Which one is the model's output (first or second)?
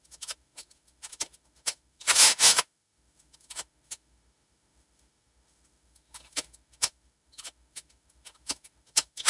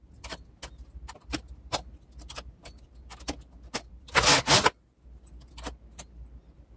first